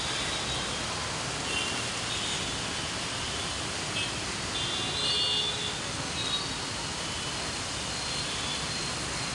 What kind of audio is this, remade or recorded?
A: recorded